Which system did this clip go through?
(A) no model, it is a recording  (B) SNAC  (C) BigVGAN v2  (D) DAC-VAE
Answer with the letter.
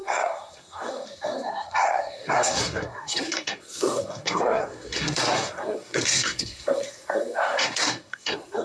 B